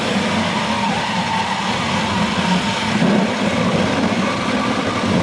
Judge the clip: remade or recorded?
recorded